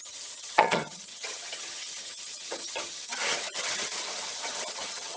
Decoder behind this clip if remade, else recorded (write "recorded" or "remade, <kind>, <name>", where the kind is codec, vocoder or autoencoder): remade, vocoder, HiFi-GAN